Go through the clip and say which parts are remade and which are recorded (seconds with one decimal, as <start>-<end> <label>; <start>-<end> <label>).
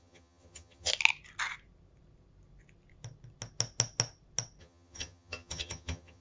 0.0-0.9 remade; 0.9-4.6 recorded; 4.6-6.2 remade